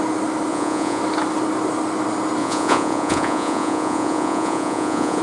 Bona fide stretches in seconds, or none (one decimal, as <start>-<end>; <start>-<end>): 0.0-0.5; 1.0-2.4